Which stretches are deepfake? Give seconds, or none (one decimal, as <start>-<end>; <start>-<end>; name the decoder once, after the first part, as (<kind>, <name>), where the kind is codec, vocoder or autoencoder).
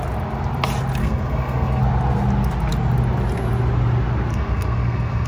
1.0-1.8 (codec, SNAC); 4.3-5.3